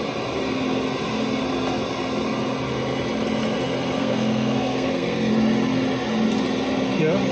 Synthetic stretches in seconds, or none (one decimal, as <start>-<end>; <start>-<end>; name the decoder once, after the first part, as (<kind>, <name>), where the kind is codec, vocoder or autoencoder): 4.0-5.3 (codec, SNAC)